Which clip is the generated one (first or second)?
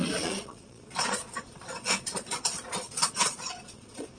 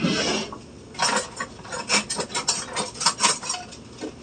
first